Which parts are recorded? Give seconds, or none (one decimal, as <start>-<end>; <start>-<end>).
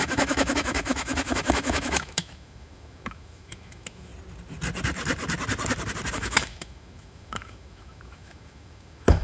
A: 4.1-6.1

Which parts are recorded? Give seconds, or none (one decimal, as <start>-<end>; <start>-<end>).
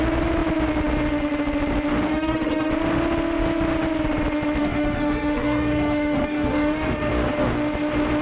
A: 0.0-2.1; 2.7-4.6; 7.1-8.2